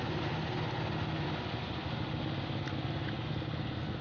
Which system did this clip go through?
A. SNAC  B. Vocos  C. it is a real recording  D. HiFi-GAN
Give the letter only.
C